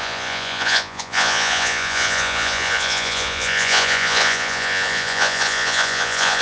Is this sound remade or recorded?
remade